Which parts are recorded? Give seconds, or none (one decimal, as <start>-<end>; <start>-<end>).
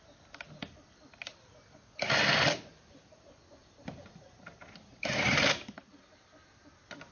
0.0-0.6; 1.1-7.1